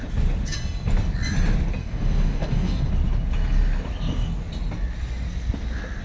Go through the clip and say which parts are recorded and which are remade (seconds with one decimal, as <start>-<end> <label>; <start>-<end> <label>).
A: 0.0-1.8 recorded; 1.8-2.9 remade; 2.9-6.0 recorded